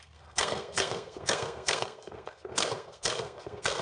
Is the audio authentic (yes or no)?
no